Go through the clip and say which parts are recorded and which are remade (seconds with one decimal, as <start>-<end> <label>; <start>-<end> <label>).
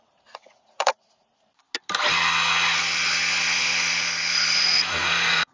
0.0-1.3 remade; 1.3-4.6 recorded; 4.6-5.5 remade